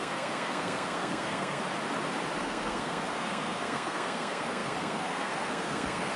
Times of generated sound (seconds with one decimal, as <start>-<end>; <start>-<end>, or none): 0.0-1.6; 2.4-6.2